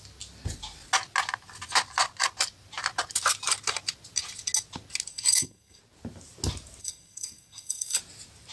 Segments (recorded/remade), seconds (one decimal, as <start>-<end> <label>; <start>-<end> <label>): 0.0-5.1 recorded; 5.1-5.8 remade; 5.8-6.8 recorded; 6.8-8.0 remade; 8.0-8.5 recorded